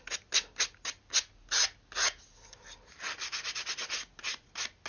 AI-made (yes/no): no